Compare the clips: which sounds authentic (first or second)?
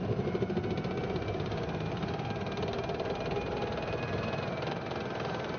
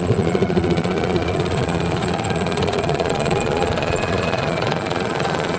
first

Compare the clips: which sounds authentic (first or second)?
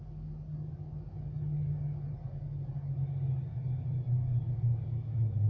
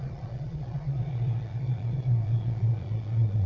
first